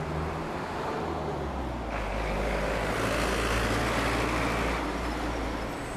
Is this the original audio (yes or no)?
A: yes